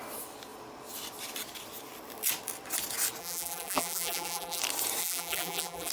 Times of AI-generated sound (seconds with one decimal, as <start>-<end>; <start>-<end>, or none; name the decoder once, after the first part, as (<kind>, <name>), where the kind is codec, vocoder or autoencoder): 3.2-4.6 (vocoder, BigVGAN v2); 5.0-5.9